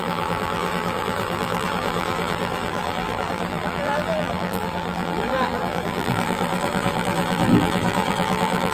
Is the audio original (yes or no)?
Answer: no